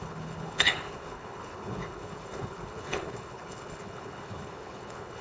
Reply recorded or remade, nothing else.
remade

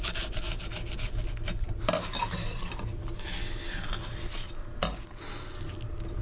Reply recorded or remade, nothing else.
recorded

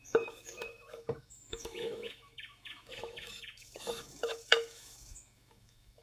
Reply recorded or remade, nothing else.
remade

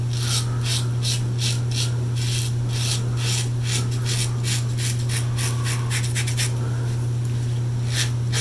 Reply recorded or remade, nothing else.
recorded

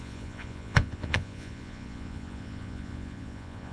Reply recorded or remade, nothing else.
remade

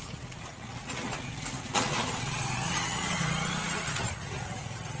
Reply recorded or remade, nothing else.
remade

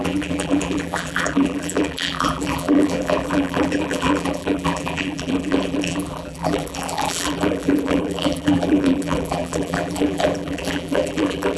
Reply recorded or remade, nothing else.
remade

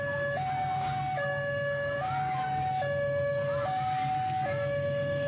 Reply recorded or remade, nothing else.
remade